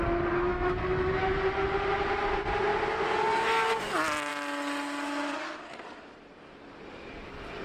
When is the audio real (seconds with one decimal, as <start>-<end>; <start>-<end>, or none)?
0.0-0.5; 1.1-7.6